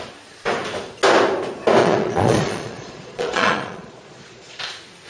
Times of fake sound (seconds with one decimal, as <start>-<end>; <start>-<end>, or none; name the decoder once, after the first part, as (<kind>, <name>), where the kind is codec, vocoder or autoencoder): 1.8-4.6 (vocoder, Vocos)